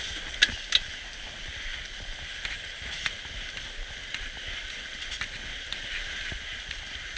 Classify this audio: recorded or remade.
recorded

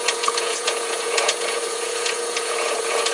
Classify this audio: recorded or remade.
remade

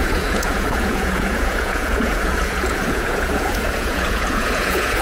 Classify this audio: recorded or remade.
remade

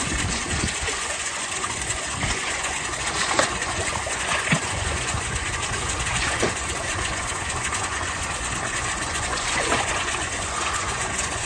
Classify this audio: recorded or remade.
remade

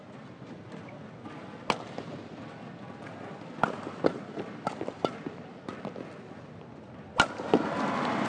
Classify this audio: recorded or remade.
recorded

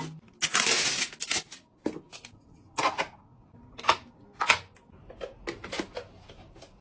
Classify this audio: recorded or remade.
recorded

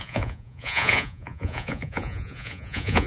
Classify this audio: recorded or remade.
remade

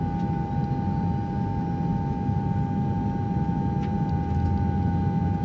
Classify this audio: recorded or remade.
recorded